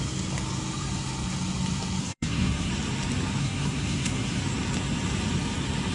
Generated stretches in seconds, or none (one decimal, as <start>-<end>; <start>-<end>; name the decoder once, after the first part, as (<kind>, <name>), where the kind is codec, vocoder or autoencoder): 2.0-2.7 (codec, SNAC); 3.4-4.4